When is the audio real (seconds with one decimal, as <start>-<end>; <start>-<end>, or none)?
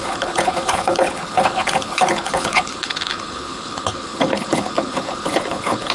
none